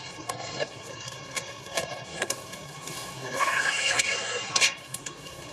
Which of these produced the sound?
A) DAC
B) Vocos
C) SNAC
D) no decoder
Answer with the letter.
C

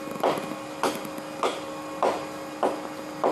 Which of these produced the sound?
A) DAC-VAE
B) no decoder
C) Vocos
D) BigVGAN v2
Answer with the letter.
B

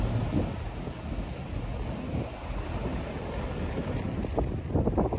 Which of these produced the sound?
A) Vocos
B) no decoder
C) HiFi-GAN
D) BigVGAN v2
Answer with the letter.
B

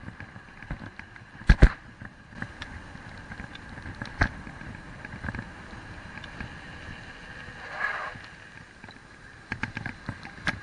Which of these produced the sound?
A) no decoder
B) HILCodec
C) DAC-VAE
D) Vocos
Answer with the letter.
A